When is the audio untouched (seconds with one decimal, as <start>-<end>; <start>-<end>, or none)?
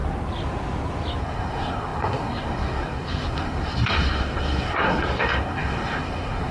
0.0-1.2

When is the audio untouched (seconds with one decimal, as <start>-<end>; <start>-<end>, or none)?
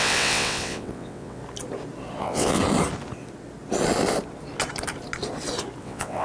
1.4-2.2; 2.6-5.8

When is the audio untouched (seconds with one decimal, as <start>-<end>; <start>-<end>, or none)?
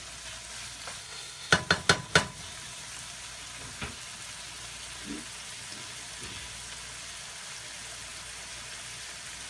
0.0-1.0; 1.5-9.5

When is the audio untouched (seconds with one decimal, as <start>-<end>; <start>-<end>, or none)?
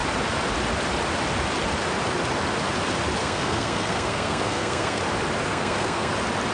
0.0-3.2; 5.0-5.5; 6.1-6.5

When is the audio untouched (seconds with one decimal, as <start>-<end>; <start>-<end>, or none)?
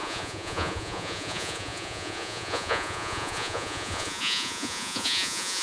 none